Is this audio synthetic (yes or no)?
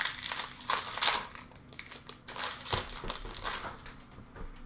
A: no